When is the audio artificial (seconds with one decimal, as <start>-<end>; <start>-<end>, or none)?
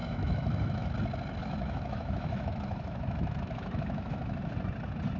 0.0-0.9; 1.4-4.5